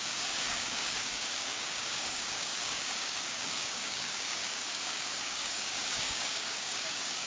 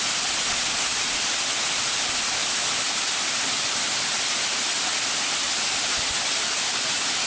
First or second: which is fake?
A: first